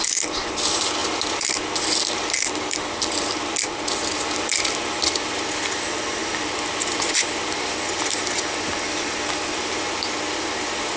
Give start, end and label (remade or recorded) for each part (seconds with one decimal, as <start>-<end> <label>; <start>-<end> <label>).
0.0-6.2 remade; 6.2-7.1 recorded; 7.1-11.0 remade